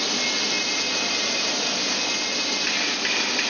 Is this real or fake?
real